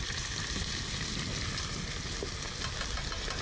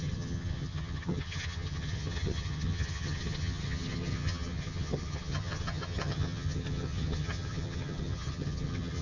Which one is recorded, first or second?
first